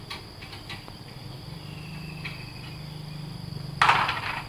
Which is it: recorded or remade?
recorded